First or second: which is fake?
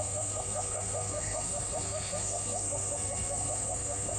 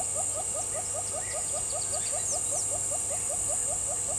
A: first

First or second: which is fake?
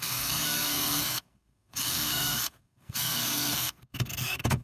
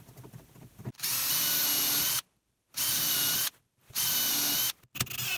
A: first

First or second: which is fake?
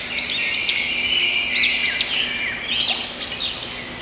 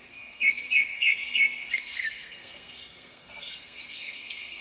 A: second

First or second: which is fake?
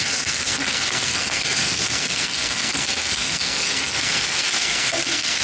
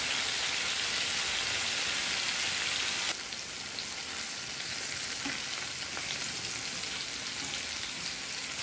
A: first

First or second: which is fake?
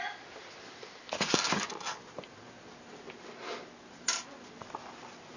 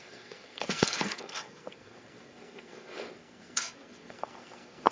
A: second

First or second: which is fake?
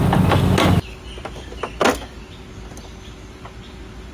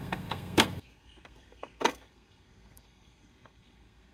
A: second